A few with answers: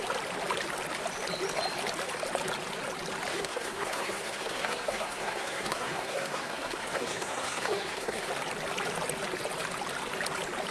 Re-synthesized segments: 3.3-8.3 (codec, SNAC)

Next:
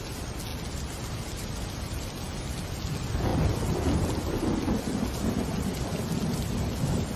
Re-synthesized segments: none

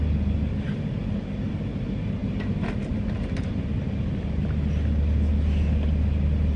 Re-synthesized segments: none

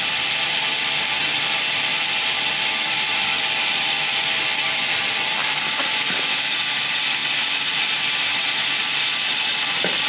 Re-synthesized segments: 0.0-10.1 (vocoder, BigVGAN v2)